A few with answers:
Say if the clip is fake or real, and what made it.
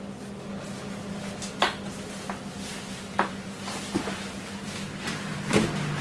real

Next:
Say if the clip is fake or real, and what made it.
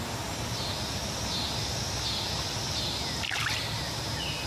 real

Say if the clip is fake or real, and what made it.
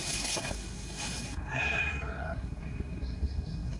fake, codec, SNAC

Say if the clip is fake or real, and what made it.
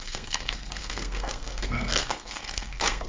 fake, codec, SNAC